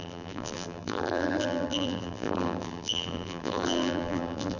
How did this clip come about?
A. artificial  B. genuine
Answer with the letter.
A